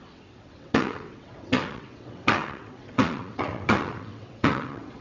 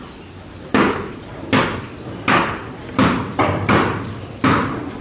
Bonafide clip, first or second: second